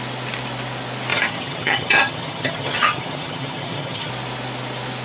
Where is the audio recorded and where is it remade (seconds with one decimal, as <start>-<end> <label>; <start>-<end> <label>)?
0.0-1.1 recorded; 1.1-4.1 remade; 4.1-5.0 recorded